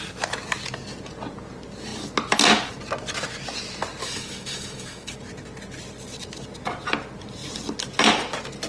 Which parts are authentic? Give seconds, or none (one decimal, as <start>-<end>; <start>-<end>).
0.0-4.0; 5.1-8.7